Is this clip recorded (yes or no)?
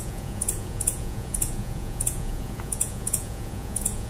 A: no